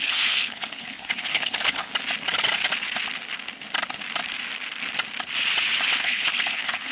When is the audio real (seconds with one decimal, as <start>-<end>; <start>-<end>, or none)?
1.9-6.0